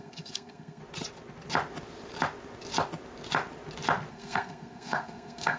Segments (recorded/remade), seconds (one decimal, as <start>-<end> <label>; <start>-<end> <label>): 0.0-0.8 remade; 0.8-4.1 recorded; 4.1-5.6 remade